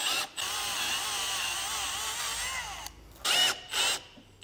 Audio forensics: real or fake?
real